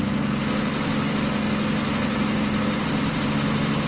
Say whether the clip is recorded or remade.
recorded